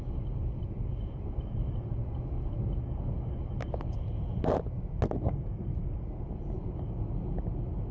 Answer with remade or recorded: recorded